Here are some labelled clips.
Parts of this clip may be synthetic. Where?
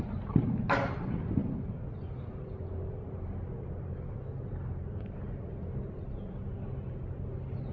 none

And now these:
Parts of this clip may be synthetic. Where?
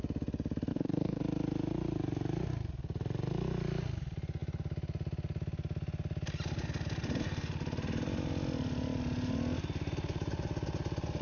0.7-1.2 (codec, DAC)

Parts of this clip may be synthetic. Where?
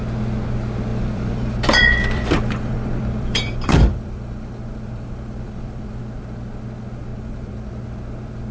0.9-6.0 (vocoder, BigVGAN v2); 7.1-7.7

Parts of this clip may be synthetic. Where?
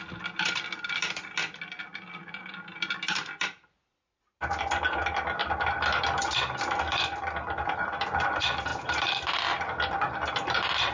8.7-9.4 (vocoder, BigVGAN v2)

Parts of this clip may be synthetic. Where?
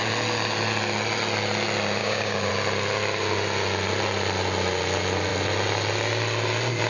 2.0-2.5 (codec, DAC)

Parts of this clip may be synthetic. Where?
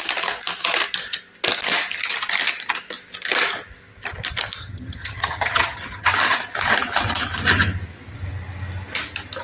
4.6-6.1 (vocoder, HiFi-GAN)